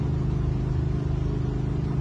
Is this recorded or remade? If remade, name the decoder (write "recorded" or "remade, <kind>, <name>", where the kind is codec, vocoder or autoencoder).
recorded